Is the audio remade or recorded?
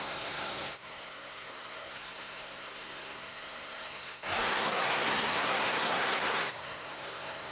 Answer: remade